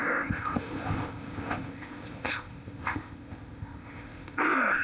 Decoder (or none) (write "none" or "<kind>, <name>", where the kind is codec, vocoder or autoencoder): codec, ZipCodec